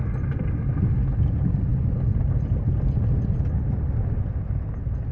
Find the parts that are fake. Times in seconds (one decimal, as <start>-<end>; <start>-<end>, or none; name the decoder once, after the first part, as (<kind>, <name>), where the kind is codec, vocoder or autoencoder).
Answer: none